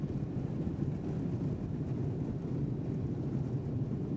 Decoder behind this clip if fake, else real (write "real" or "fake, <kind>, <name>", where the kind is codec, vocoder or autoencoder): real